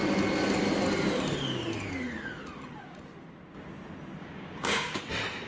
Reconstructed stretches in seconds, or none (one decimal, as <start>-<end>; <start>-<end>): 4.2-5.0